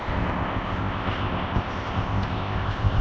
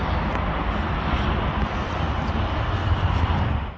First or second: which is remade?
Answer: first